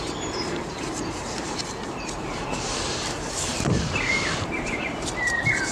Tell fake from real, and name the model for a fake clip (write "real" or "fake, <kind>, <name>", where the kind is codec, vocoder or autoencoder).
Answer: fake, vocoder, BigVGAN v2